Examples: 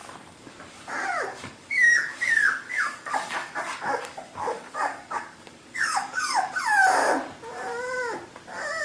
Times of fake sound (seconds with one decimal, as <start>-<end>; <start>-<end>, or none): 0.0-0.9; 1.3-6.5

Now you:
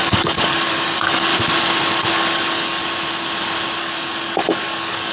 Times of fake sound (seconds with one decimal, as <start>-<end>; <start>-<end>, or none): 0.0-1.3; 2.1-2.8; 3.8-5.1

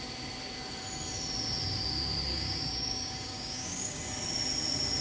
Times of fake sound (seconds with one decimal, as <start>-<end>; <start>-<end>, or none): 2.3-4.0

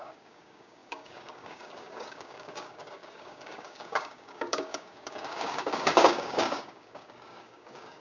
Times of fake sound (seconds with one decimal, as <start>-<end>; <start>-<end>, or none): 0.0-8.0